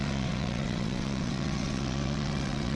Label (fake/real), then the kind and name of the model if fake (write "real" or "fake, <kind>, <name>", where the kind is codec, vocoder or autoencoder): fake, vocoder, WaveNeXt